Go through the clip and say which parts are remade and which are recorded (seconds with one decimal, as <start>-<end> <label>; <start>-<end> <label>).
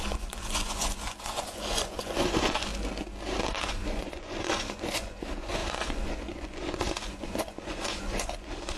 0.0-2.7 remade; 2.7-3.6 recorded; 3.6-8.8 remade